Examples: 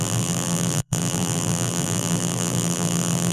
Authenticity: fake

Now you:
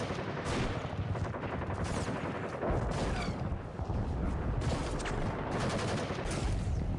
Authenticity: real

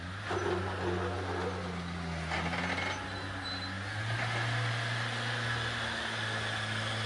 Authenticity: real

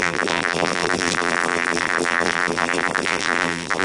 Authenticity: fake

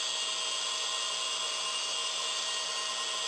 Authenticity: real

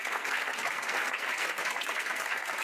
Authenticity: fake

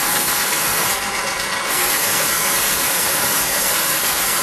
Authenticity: fake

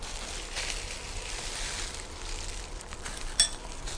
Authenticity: real